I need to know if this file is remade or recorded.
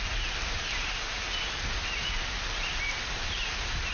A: recorded